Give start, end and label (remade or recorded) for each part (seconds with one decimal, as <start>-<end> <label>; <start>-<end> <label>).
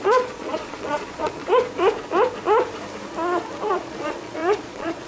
0.0-1.4 remade; 1.4-3.7 recorded; 3.7-5.1 remade